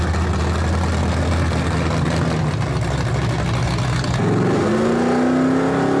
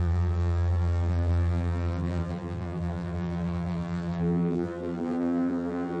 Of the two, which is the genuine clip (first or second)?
first